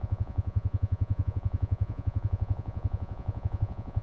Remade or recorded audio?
remade